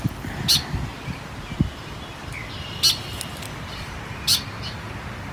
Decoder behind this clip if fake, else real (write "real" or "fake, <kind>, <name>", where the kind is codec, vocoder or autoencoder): real